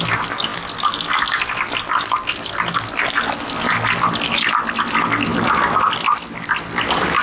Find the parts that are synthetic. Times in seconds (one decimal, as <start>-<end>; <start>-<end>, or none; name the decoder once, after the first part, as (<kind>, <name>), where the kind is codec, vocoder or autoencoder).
none